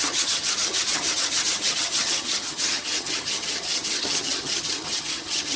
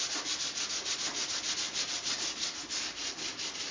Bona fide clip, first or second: second